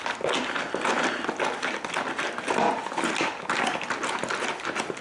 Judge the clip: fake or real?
real